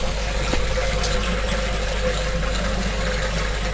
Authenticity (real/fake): real